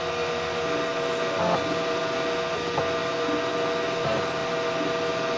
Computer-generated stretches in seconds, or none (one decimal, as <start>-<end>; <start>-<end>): none

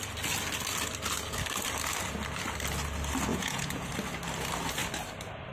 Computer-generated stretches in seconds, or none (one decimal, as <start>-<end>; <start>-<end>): 3.3-3.9

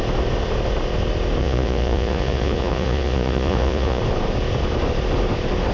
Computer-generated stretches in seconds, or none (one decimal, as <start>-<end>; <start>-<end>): 1.4-4.0